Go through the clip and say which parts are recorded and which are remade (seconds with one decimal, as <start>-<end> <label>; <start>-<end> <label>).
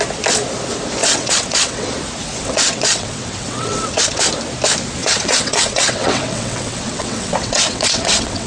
0.0-1.0 recorded; 1.0-1.9 remade; 1.9-2.4 recorded; 2.4-4.2 remade; 4.2-5.0 recorded; 5.0-8.5 remade